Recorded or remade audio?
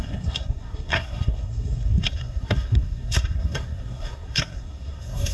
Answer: remade